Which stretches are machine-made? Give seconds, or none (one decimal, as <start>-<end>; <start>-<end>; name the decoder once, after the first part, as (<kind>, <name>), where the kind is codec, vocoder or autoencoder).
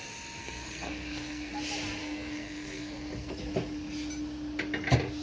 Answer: 0.4-1.5 (codec, SNAC); 2.0-3.3